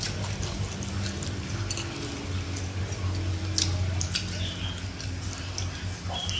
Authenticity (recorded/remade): recorded